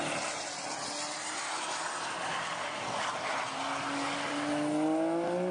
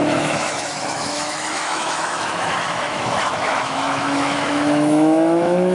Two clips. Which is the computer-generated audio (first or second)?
second